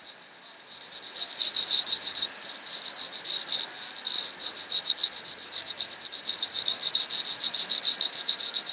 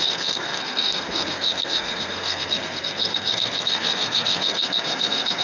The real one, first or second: first